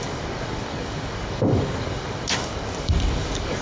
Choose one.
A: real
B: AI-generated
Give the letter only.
B